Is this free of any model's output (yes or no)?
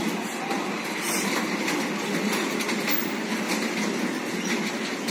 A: yes